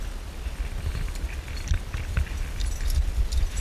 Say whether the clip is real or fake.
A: real